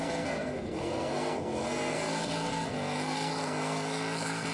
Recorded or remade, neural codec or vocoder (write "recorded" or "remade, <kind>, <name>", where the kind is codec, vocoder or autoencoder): remade, codec, SNAC